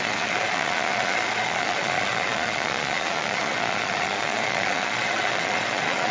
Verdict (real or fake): fake